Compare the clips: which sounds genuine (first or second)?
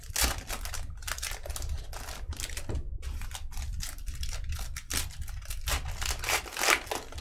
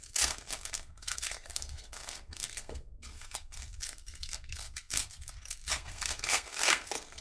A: first